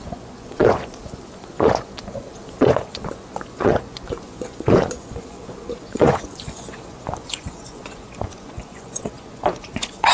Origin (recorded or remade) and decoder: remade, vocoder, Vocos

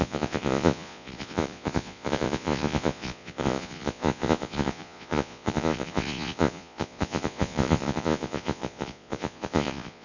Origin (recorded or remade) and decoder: remade, vocoder, Vocos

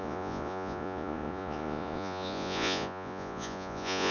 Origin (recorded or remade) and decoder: remade, vocoder, Vocos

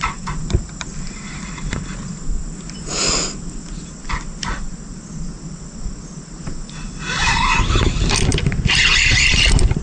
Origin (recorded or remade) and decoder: recorded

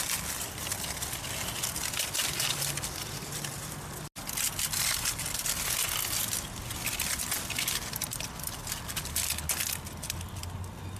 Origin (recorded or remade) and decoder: recorded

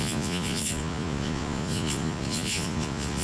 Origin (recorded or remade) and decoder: remade, vocoder, Vocos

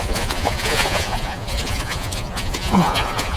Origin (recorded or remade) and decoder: remade, vocoder, Vocos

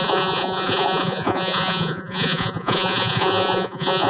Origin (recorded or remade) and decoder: remade, vocoder, Vocos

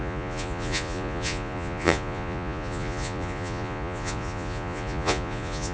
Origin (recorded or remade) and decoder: remade, vocoder, Vocos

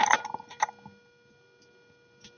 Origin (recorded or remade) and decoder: recorded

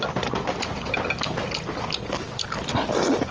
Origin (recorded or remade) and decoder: recorded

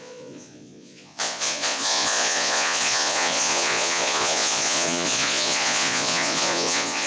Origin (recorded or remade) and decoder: remade, vocoder, Vocos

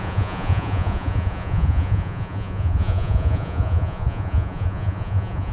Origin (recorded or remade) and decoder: remade, vocoder, Vocos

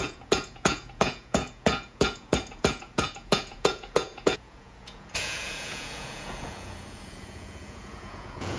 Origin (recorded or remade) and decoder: remade, vocoder, Vocos